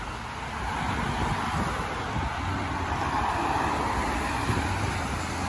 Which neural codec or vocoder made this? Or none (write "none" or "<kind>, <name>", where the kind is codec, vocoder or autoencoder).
none